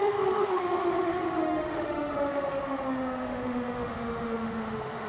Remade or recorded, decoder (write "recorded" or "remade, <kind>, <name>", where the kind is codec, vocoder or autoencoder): remade, autoencoder, DAC-VAE